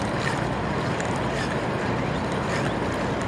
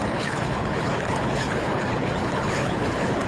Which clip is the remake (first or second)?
second